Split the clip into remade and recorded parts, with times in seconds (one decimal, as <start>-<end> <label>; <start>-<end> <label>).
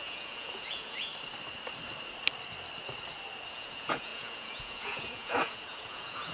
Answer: 0.0-1.1 remade; 1.1-3.5 recorded; 3.5-6.3 remade